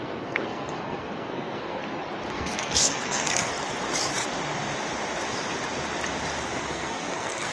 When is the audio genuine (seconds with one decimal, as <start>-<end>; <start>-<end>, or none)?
1.8-2.3; 3.5-6.7